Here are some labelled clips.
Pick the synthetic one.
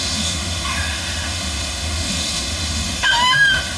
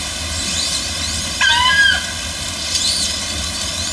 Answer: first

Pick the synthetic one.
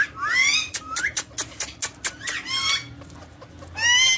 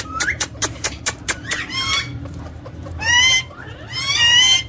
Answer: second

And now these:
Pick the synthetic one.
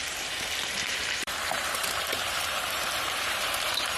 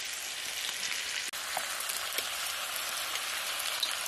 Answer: first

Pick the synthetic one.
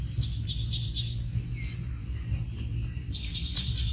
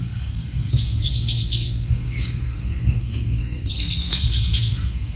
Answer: second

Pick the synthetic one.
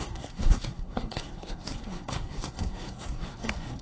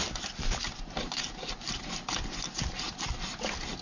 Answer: first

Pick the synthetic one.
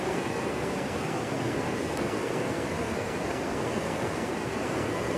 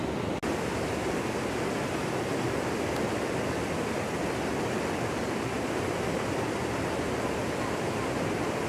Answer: first